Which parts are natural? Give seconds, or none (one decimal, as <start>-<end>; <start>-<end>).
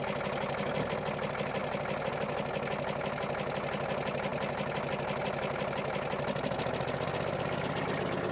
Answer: 0.0-8.3